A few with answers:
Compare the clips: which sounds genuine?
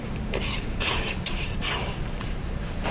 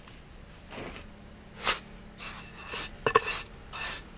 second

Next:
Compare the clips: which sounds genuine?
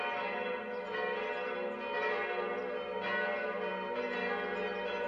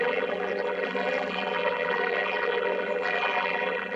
first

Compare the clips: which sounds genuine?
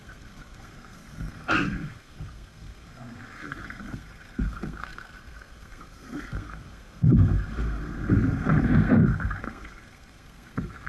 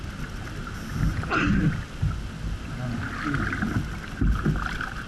second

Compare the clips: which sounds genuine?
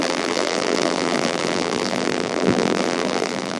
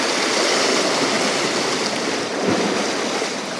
second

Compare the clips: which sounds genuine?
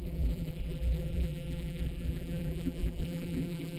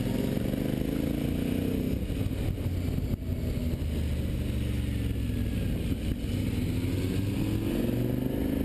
second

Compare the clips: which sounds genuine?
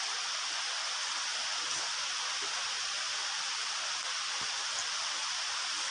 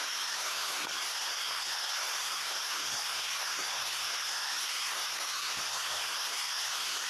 first